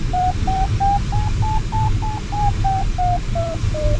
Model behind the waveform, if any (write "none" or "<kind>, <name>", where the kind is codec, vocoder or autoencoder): vocoder, BigVGAN v2